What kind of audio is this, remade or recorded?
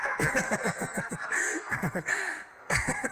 remade